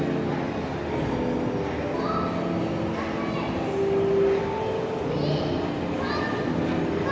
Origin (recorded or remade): recorded